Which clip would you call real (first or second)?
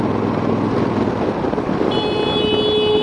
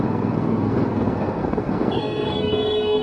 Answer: first